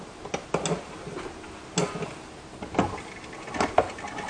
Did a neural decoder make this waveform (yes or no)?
no